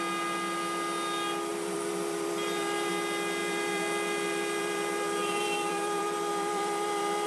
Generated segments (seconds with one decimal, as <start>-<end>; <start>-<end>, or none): 1.5-2.9; 3.4-7.3